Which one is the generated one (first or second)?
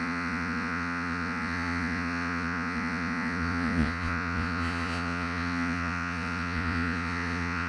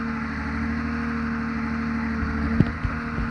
first